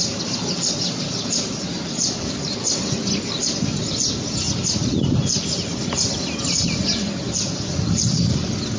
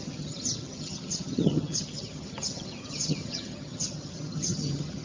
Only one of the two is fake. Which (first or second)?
second